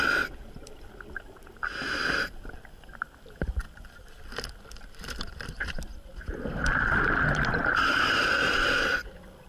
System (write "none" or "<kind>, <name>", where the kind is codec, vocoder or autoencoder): none